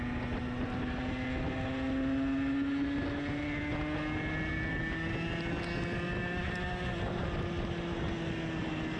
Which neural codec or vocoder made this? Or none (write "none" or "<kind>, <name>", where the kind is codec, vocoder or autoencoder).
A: none